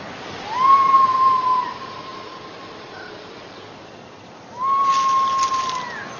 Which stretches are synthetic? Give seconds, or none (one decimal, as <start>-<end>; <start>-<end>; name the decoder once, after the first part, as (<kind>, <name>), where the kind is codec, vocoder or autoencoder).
none